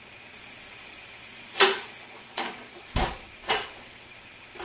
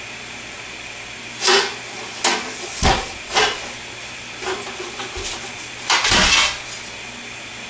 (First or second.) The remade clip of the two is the first